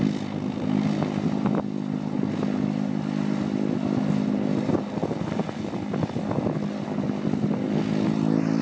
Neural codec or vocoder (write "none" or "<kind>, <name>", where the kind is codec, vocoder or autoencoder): none